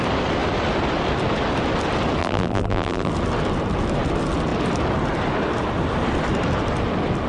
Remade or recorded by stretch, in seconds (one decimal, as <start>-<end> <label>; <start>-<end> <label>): 0.0-2.2 recorded; 2.2-3.1 remade; 3.1-7.3 recorded